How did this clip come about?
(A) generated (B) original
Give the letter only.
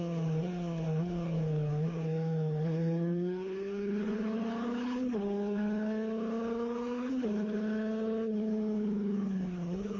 A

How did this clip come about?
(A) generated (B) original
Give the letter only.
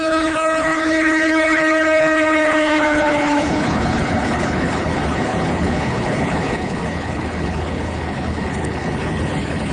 A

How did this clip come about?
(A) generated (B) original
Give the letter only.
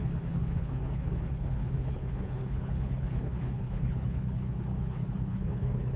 A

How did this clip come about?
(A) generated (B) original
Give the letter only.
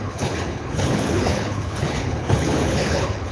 A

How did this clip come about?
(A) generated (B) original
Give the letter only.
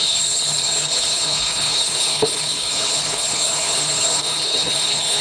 A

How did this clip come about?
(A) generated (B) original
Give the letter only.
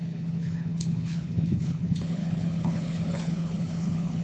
A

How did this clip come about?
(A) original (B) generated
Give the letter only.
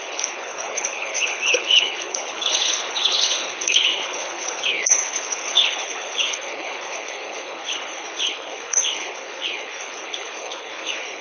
B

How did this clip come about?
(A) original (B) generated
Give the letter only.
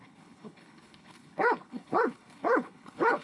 B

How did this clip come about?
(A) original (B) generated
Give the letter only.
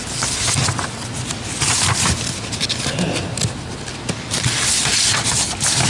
A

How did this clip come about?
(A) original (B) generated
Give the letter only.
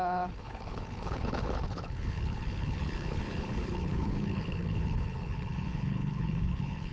B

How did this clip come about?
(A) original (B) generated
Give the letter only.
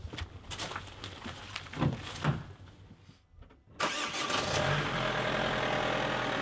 A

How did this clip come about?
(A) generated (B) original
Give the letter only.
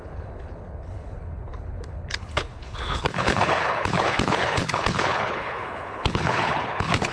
A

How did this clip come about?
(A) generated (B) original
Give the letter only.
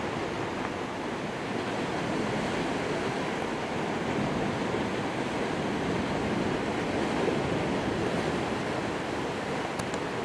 B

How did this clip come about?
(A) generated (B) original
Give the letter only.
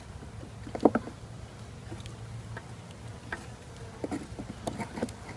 B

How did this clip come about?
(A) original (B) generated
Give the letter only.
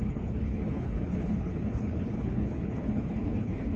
B